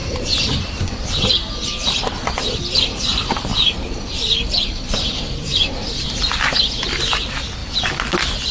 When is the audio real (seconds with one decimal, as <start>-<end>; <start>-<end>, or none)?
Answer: 1.3-3.5; 6.7-7.6